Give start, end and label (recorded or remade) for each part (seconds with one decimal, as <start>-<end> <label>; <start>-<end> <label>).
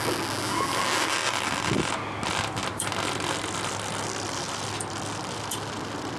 0.0-1.2 recorded; 1.2-1.9 remade; 1.9-2.6 recorded; 2.6-5.6 remade; 5.6-6.2 recorded